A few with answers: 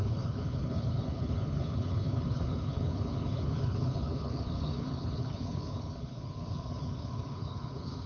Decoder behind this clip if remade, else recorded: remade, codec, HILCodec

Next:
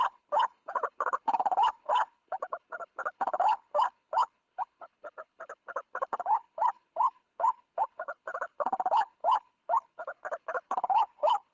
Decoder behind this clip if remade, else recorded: remade, codec, HILCodec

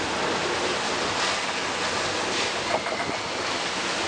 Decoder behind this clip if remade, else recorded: recorded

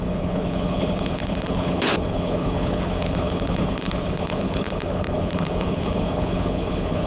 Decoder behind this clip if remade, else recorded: remade, codec, HILCodec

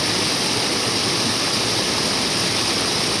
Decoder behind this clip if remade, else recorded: recorded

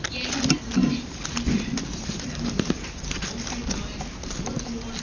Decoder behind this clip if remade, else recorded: recorded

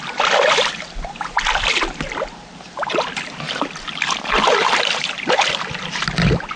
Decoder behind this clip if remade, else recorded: recorded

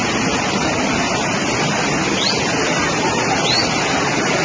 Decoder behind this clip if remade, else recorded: recorded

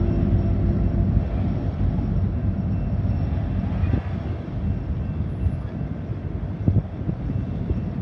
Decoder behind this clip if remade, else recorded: recorded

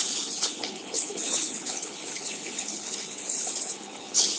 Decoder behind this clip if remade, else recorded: remade, codec, HILCodec